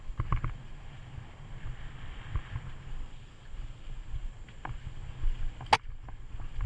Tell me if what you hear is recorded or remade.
recorded